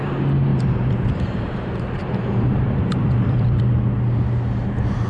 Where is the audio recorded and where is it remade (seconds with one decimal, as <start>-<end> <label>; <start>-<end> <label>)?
0.0-0.5 recorded; 0.5-3.6 remade; 3.6-5.1 recorded